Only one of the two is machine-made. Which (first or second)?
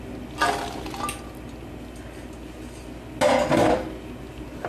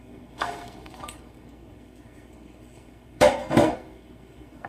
second